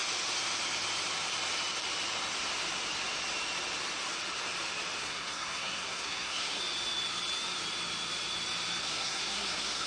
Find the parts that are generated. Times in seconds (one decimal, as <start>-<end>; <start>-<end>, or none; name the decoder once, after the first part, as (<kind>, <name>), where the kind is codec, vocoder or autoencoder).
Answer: 5.0-6.6 (codec, SNAC); 8.8-9.9